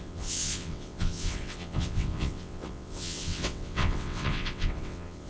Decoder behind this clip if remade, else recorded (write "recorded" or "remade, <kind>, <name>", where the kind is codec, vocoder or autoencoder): remade, vocoder, WaveNeXt